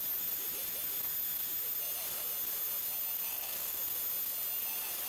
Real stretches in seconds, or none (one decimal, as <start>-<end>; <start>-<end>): 0.0-3.3; 3.8-5.1

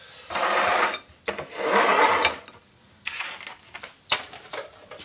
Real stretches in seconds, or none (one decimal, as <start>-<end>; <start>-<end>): 0.0-5.0

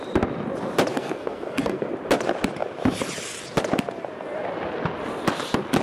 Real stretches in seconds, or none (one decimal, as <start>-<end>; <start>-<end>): 0.0-0.9; 1.9-5.8

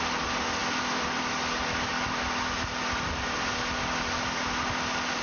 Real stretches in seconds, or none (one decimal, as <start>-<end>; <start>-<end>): 0.0-5.2

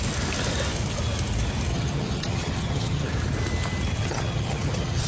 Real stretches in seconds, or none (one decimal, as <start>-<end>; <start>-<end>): 0.0-1.7; 3.1-4.0

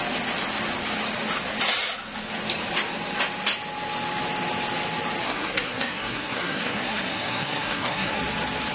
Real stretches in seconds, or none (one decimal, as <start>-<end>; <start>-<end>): 0.0-5.2; 8.2-8.7

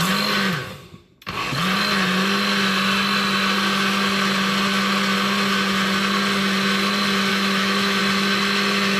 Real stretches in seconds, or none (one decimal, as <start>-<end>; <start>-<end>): 0.0-7.3; 8.0-9.0

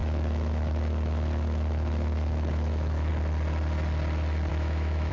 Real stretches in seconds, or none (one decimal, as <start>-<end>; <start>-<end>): 3.1-4.5